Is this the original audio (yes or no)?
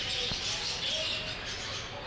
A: yes